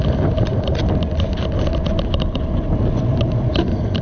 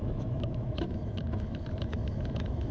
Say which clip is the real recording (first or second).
first